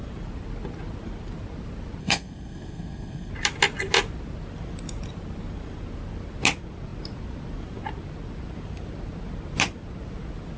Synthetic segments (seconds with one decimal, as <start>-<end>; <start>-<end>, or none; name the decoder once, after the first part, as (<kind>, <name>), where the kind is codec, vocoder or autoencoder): 2.0-3.3 (codec, SNAC)